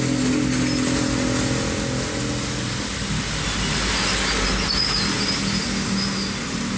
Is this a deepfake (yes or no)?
no